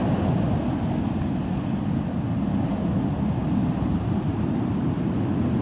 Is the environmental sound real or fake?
real